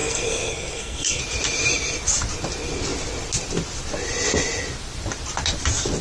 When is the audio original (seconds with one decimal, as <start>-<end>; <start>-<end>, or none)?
1.2-6.0